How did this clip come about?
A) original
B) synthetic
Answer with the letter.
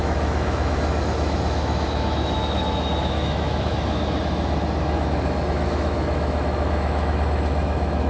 B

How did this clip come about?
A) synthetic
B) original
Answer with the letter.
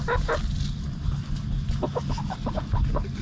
B